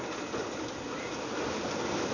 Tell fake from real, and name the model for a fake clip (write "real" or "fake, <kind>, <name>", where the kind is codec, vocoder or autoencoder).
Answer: real